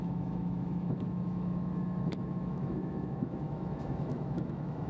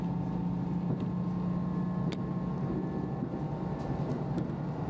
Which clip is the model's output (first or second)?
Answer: first